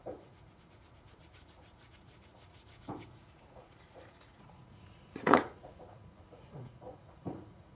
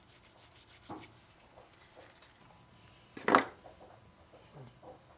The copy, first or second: first